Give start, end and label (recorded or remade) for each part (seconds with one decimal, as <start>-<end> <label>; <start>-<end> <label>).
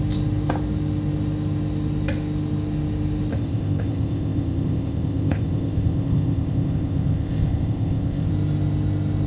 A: 0.0-3.3 recorded; 3.3-8.3 remade; 8.3-9.3 recorded